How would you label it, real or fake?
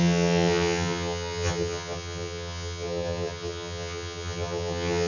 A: fake